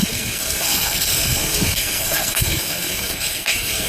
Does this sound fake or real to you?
fake